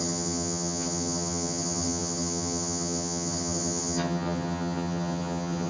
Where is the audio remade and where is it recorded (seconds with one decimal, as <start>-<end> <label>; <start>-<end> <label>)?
0.0-5.7 remade